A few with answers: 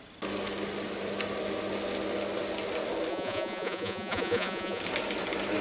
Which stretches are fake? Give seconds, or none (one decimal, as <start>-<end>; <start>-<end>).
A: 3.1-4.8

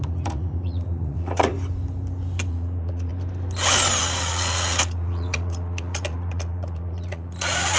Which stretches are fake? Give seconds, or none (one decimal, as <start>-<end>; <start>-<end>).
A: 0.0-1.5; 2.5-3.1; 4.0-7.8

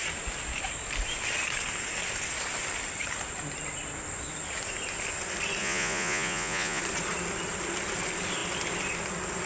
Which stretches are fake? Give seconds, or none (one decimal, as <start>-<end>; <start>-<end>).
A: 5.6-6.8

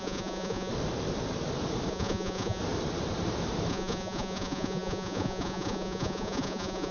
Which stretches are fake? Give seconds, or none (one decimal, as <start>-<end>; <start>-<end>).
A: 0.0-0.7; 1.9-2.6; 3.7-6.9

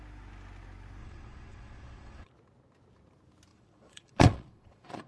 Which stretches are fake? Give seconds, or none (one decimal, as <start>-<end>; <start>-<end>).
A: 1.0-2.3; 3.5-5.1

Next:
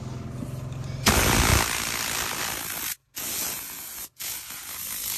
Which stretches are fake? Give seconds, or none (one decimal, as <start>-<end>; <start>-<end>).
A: 3.0-4.8